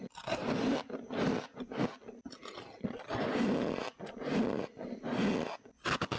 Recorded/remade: recorded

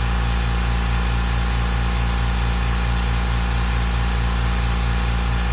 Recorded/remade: recorded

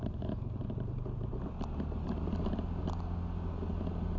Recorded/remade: recorded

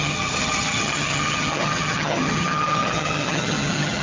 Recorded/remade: remade